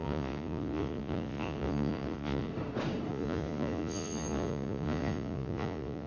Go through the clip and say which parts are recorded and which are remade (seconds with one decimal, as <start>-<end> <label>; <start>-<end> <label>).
0.0-2.5 remade; 2.5-3.1 recorded; 3.1-6.1 remade